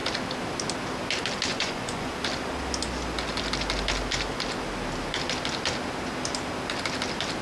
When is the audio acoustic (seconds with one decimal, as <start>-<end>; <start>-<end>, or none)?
0.0-1.5; 2.1-7.4